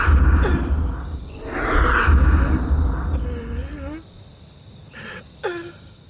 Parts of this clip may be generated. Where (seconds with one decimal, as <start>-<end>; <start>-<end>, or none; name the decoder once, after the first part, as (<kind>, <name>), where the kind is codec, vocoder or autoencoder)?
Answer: none

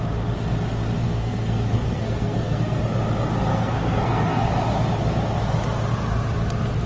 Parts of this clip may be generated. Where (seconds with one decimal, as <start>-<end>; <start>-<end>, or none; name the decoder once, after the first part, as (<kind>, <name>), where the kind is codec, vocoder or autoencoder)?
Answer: 1.0-2.8 (codec, SNAC); 3.5-4.4

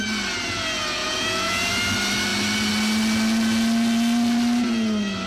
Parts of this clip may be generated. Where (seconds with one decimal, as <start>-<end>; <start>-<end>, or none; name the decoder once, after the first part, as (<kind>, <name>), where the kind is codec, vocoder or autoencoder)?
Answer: 1.0-1.7 (vocoder, Vocos)

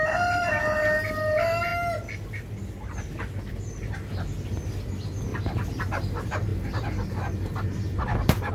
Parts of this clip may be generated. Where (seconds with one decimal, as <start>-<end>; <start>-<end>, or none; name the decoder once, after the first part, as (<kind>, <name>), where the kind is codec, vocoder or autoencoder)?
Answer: 5.3-5.9 (vocoder, BigVGAN v2); 6.5-8.5